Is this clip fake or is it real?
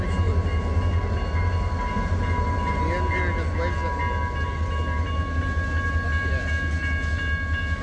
real